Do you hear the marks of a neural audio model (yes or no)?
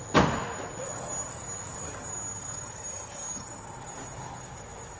no